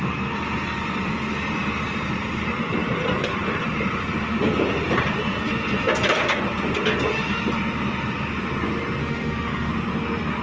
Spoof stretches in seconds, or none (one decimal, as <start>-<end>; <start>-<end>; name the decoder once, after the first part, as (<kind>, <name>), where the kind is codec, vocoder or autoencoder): 9.0-9.7 (autoencoder, DAC-VAE)